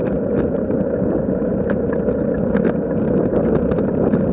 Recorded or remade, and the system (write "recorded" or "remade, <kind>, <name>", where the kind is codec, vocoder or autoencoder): recorded